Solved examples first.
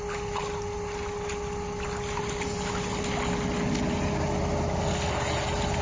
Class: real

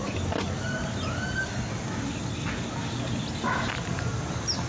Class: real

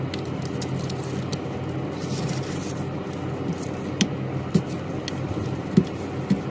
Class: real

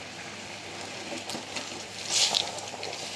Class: real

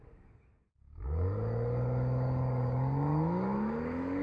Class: fake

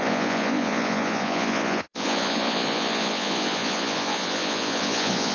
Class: fake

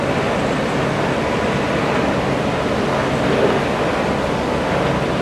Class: real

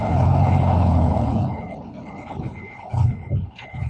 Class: fake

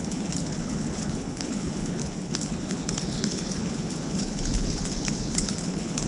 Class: fake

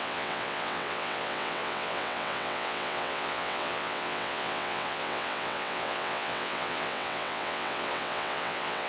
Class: fake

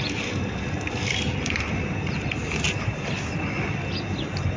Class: real